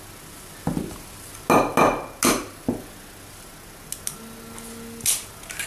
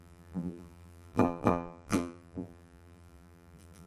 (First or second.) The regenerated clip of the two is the second